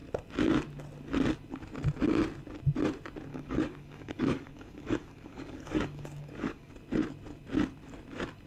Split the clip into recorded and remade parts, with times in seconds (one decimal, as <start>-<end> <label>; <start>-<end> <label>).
0.0-3.3 recorded; 3.3-6.7 remade; 6.7-8.5 recorded